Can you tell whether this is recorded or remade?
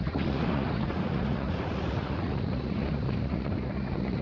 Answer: remade